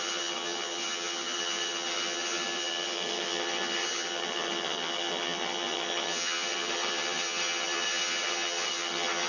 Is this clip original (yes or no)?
no